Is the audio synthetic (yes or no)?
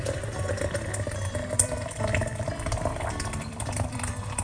yes